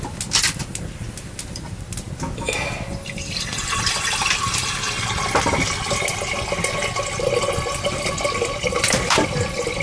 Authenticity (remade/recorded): recorded